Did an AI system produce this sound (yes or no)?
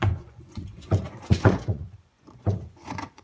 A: yes